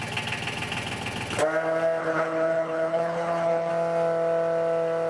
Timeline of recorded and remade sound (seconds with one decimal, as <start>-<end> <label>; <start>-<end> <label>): 0.0-2.0 recorded; 2.0-3.7 remade; 3.7-5.1 recorded